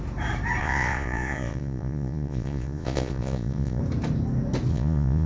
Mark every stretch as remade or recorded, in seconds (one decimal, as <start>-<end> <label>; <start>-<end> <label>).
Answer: 0.0-0.6 recorded; 0.6-3.8 remade; 3.8-4.7 recorded; 4.7-5.3 remade